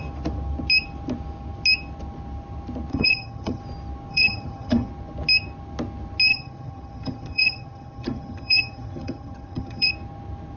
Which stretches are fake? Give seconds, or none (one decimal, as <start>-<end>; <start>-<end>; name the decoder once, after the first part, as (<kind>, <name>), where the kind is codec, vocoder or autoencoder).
2.9-3.6 (vocoder, HiFi-GAN); 4.1-4.9; 6.3-9.9